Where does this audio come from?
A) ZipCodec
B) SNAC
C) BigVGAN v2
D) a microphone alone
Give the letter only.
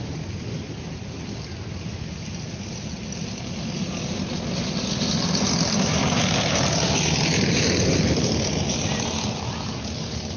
D